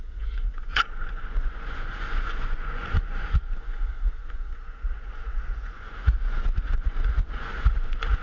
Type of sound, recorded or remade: remade